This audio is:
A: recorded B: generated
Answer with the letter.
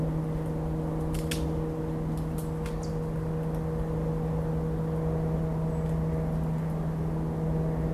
A